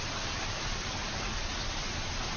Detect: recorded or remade recorded